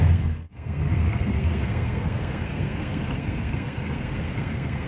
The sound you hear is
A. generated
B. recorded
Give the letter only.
A